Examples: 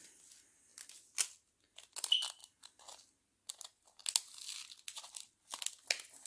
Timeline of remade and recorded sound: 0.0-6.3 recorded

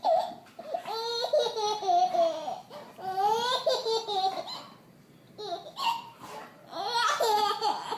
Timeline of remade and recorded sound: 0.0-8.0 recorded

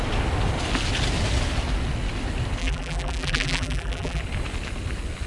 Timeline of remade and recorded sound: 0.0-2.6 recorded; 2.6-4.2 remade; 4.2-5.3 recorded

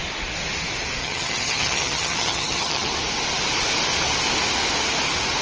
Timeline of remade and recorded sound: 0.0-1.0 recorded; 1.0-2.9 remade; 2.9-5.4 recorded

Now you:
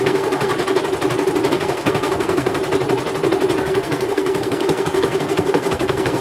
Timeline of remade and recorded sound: 0.0-0.5 remade; 0.5-1.5 recorded; 1.5-2.6 remade; 2.6-3.6 recorded; 3.6-6.2 remade